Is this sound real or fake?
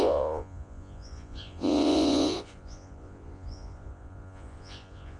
fake